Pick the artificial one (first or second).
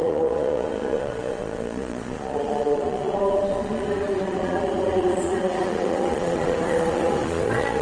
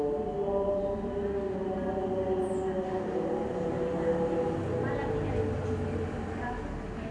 first